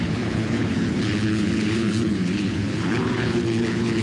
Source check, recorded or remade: remade